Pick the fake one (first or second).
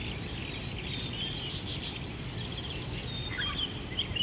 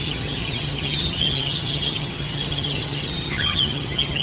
second